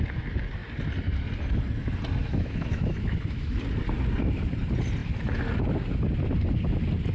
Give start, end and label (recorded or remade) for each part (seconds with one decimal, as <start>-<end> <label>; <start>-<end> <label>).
0.0-2.2 recorded; 2.2-3.6 remade; 3.6-7.1 recorded